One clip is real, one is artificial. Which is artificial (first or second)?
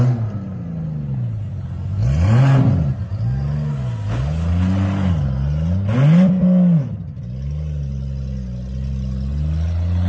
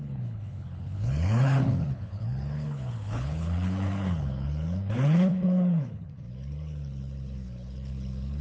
second